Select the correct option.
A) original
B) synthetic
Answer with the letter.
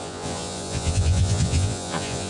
B